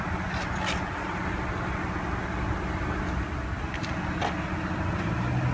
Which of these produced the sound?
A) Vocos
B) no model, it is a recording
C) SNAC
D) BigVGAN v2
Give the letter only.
B